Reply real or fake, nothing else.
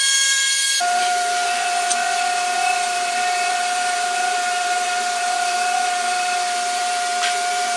fake